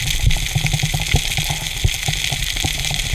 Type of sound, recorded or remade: recorded